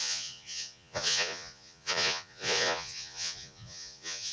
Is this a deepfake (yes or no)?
yes